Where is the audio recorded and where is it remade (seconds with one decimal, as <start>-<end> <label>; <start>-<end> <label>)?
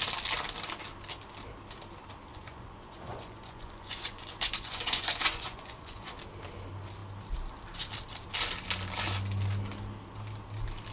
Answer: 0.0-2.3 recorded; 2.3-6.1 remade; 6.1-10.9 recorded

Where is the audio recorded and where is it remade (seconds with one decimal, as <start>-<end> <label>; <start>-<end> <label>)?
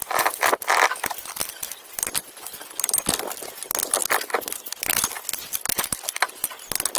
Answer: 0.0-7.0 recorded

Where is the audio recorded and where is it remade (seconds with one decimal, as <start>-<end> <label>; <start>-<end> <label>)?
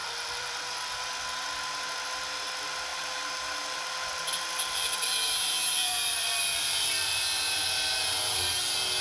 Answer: 0.0-1.0 remade; 1.0-2.9 recorded; 2.9-8.0 remade; 8.0-9.0 recorded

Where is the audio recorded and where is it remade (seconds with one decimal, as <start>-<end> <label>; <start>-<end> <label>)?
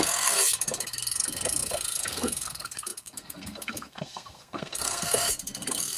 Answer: 0.0-6.0 remade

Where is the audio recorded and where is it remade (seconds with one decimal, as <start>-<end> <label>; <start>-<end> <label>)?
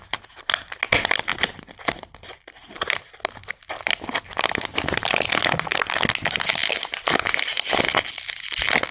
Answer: 0.0-1.3 recorded; 1.3-3.0 remade; 3.0-5.7 recorded; 5.7-6.5 remade; 6.5-8.9 recorded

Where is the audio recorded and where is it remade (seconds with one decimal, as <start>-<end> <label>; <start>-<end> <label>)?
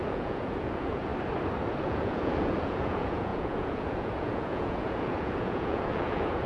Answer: 0.0-1.1 remade; 1.1-1.8 recorded; 1.8-6.5 remade